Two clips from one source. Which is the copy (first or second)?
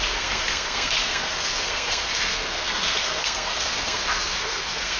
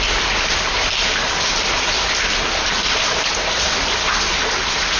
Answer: first